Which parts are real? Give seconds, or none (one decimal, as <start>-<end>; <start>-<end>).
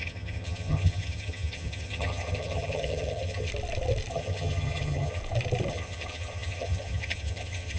3.5-4.1; 5.2-5.7